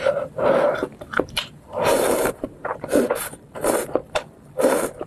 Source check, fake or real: fake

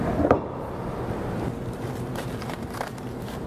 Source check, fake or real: fake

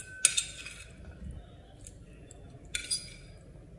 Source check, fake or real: real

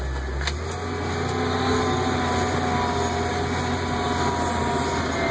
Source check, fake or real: real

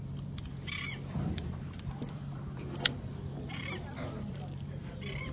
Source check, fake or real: fake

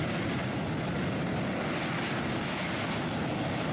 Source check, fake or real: real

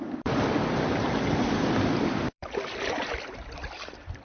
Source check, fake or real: fake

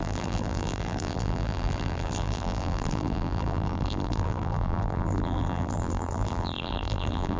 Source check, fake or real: fake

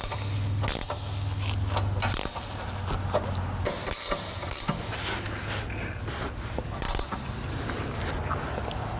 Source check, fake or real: real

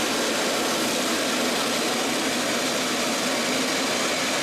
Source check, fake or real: real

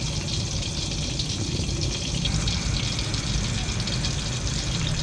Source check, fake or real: fake